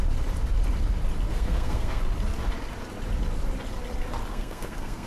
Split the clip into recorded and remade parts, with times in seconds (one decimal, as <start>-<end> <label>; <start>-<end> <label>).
0.0-1.3 recorded; 1.3-2.0 remade; 2.0-4.3 recorded; 4.3-5.1 remade